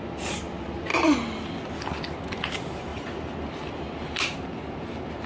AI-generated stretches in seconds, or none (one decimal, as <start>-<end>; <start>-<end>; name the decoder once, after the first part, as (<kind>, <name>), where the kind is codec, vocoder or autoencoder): none